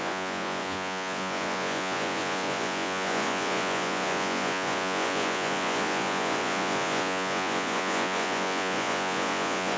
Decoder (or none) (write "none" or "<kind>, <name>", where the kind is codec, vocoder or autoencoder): vocoder, Vocos